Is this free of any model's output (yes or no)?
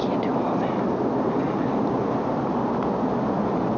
yes